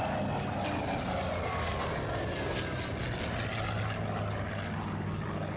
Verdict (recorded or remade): recorded